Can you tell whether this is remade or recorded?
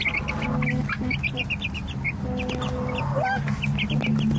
recorded